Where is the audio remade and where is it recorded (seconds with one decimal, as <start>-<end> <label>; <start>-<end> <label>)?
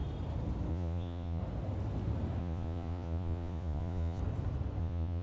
0.0-0.7 recorded; 0.7-1.4 remade; 1.4-2.4 recorded; 2.4-4.2 remade; 4.2-4.8 recorded; 4.8-5.2 remade